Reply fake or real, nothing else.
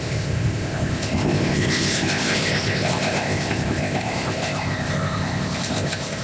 fake